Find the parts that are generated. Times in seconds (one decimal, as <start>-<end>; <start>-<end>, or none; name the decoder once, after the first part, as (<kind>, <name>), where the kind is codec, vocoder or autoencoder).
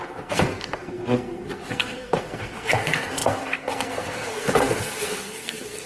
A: 0.0-5.9 (codec, SNAC)